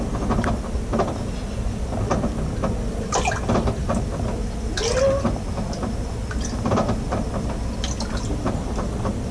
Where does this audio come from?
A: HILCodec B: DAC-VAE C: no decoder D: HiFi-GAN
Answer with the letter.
C